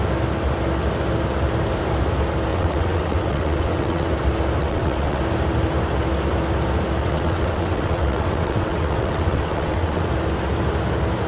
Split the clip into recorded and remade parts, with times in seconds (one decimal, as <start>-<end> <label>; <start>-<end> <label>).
0.0-2.5 recorded; 2.5-4.1 remade; 4.1-4.6 recorded; 4.6-5.2 remade; 5.2-7.0 recorded; 7.0-10.1 remade; 10.1-11.3 recorded